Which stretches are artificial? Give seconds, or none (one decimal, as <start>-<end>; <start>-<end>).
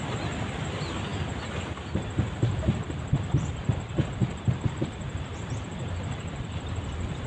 none